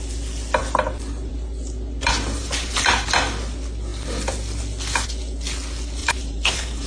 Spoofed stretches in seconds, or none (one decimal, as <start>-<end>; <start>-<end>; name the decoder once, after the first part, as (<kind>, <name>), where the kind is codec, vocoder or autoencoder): 2.4-2.9 (vocoder, BigVGAN v2); 6.0-6.9